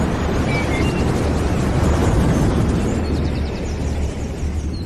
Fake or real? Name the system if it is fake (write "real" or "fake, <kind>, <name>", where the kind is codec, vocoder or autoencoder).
real